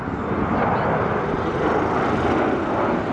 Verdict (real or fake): real